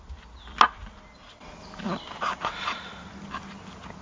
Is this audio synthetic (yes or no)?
no